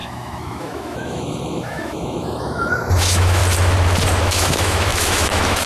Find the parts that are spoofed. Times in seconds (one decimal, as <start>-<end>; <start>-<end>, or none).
0.0-3.4; 4.2-5.7

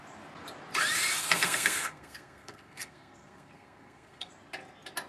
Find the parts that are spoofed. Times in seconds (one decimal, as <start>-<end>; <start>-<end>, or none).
1.2-4.3

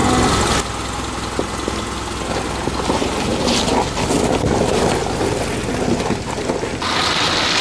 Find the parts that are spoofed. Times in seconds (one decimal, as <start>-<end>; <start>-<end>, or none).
none